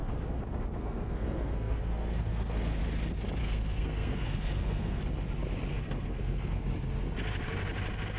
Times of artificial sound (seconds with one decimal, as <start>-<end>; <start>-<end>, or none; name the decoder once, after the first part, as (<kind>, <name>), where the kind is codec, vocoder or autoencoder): 0.0-2.8 (codec, SNAC); 3.4-5.0; 5.7-6.6